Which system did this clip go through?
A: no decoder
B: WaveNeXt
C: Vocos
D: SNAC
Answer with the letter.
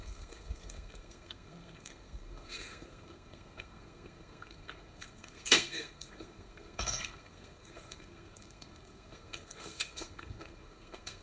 D